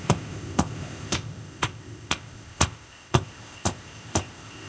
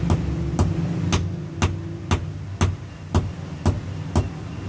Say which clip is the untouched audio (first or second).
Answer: second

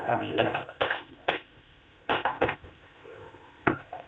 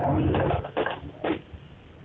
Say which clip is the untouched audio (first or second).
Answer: second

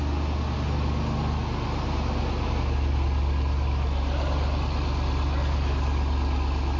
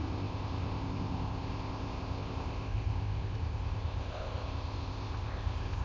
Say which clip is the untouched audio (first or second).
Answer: first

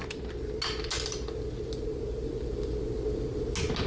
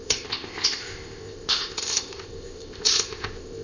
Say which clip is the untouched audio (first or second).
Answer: first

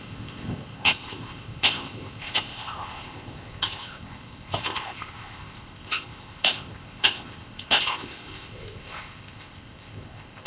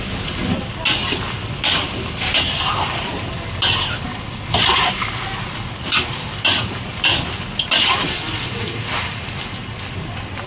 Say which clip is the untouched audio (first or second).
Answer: second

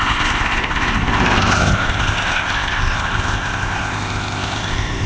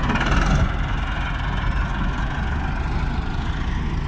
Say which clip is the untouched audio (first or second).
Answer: second